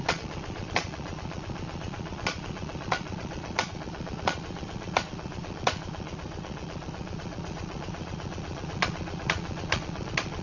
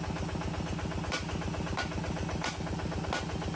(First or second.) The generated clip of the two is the first